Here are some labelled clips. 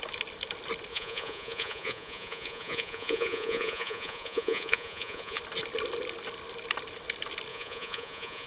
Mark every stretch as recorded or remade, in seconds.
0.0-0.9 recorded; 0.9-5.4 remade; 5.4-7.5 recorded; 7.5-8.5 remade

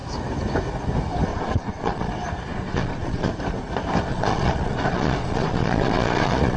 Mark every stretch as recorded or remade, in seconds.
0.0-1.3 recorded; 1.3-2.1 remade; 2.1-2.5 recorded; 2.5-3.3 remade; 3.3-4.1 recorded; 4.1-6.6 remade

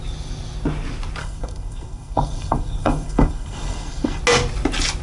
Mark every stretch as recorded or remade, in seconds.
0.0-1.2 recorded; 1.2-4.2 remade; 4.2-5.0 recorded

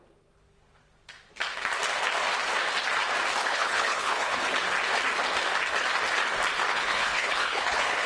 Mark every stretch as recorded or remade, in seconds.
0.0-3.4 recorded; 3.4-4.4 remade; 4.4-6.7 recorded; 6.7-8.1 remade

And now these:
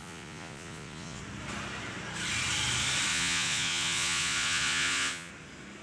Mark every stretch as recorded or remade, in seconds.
0.0-1.2 remade; 1.2-3.1 recorded; 3.1-5.3 remade; 5.3-5.8 recorded

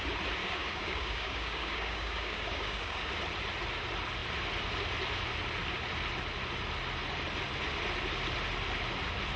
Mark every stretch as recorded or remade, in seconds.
0.0-0.4 recorded; 0.4-3.1 remade; 3.1-9.4 recorded